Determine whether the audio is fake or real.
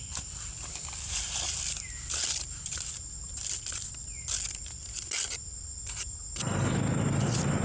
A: real